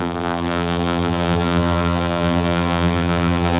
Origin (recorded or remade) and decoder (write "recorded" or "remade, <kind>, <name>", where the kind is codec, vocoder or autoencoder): remade, vocoder, BigVGAN v2